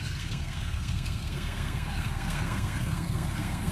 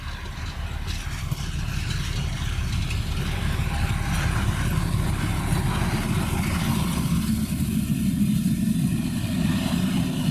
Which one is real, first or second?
second